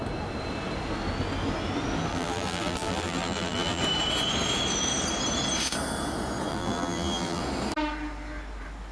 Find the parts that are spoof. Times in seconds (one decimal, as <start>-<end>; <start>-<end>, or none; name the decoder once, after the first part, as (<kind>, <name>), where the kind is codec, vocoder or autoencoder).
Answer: 2.1-3.8 (vocoder, BigVGAN v2); 6.5-7.4